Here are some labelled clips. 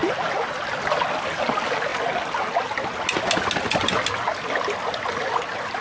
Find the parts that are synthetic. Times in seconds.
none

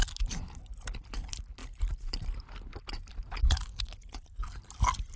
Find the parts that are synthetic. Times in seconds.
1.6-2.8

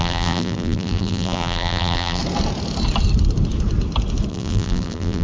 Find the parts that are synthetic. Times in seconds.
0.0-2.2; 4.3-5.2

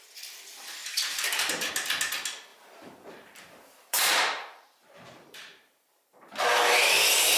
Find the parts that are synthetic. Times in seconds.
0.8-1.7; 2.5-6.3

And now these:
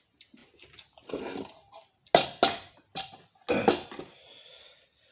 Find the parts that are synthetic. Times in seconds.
none

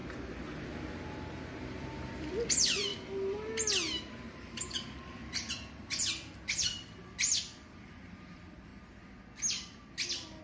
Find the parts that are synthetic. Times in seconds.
1.8-2.9; 4.1-5.2; 5.7-8.7

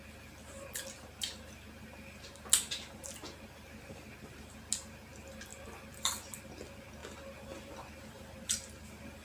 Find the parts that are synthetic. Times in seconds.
none

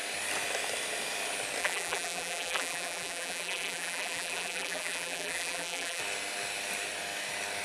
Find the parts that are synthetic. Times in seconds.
1.6-6.0